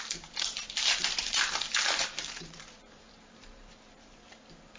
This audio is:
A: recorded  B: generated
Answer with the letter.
B